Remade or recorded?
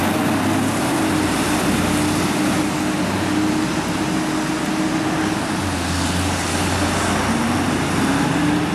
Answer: recorded